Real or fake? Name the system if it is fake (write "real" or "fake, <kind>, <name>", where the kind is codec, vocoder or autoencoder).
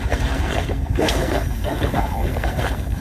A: fake, codec, SNAC